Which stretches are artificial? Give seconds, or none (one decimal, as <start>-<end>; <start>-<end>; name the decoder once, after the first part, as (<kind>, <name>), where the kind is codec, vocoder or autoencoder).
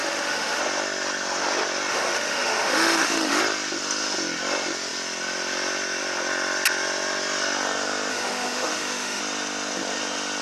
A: 0.0-0.6 (autoencoder, DAC-VAE); 1.9-3.4; 8.1-9.2